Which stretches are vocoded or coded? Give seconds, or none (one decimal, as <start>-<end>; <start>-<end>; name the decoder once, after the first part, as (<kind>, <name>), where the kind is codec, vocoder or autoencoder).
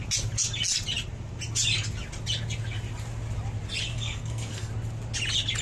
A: 3.9-4.7 (codec, SNAC)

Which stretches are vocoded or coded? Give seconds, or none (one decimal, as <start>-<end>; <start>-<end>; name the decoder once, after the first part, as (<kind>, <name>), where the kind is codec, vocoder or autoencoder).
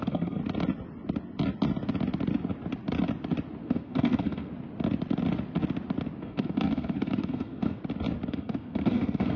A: 0.0-0.4 (codec, SNAC); 3.6-4.5; 6.2-7.8; 8.3-9.4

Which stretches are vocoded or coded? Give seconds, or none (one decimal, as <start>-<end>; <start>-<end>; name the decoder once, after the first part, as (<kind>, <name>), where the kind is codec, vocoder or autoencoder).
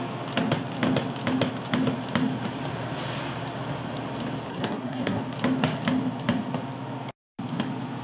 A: 4.5-5.2 (codec, SNAC)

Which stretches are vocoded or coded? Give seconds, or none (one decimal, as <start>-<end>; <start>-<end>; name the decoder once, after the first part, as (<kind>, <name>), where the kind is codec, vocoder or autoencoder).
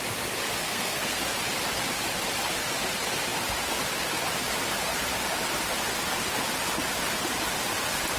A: 0.6-1.2 (codec, SNAC)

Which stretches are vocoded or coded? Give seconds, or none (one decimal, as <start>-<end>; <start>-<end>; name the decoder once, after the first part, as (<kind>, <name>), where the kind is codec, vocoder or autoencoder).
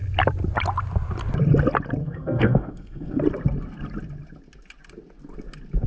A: 2.0-3.2 (codec, SNAC)